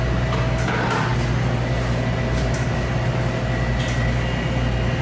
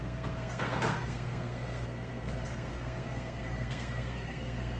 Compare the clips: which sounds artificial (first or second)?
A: second